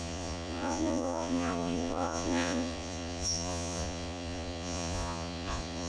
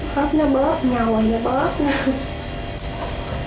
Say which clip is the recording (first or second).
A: second